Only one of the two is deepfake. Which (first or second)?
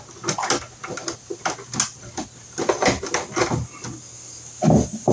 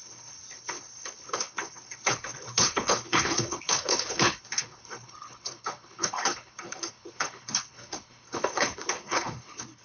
second